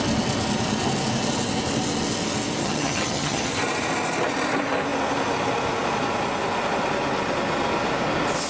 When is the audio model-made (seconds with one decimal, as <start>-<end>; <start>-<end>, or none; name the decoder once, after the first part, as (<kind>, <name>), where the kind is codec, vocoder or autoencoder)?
2.6-3.5 (vocoder, HiFi-GAN)